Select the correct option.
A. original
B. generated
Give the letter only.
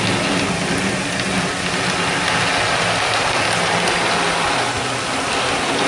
A